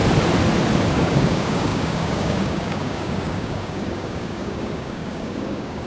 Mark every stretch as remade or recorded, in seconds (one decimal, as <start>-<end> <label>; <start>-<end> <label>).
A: 0.0-0.9 recorded; 0.9-5.9 remade